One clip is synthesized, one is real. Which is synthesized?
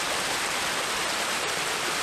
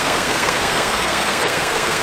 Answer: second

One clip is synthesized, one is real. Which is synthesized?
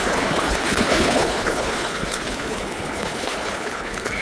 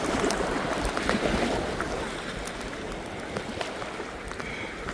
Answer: first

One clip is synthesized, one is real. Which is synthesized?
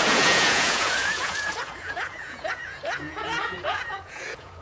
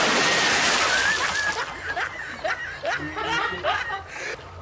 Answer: first